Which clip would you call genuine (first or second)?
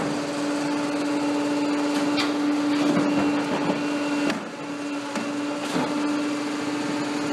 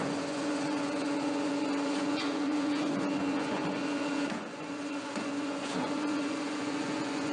first